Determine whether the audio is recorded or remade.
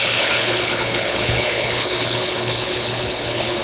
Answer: remade